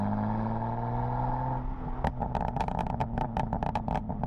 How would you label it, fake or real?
real